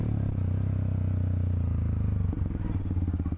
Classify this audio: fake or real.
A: real